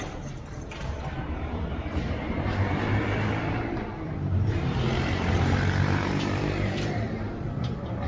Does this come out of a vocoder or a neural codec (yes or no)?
yes